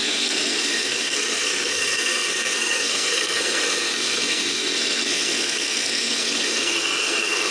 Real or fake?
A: fake